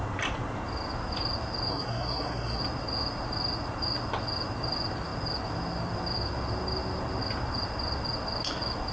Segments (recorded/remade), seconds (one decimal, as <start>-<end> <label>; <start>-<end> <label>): 0.0-1.7 recorded; 1.7-2.6 remade; 2.6-8.9 recorded